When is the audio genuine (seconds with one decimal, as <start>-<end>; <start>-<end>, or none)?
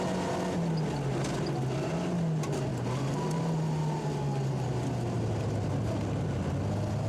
0.0-7.1